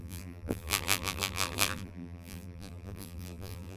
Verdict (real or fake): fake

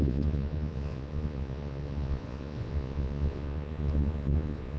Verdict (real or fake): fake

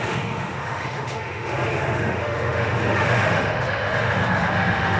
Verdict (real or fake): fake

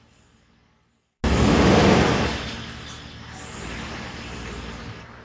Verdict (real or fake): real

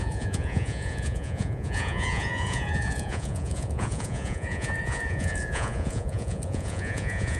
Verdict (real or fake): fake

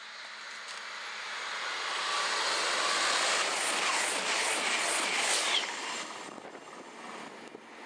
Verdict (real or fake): real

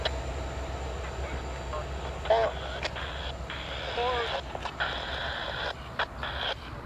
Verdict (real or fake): real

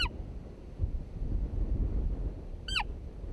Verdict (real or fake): real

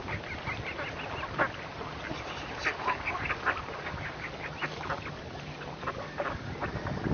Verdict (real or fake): real